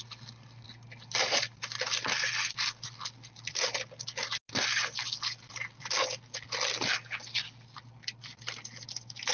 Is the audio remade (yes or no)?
no